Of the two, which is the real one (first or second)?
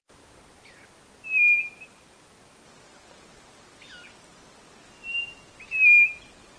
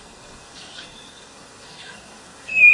first